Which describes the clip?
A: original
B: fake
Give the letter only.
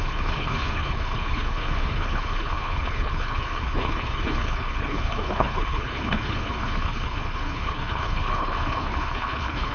B